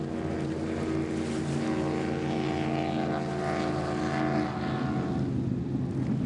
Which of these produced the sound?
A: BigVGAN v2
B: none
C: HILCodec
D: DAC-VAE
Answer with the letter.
B